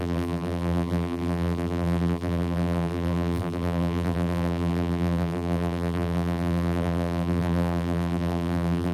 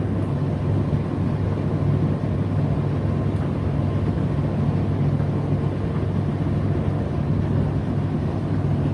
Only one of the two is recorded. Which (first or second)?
second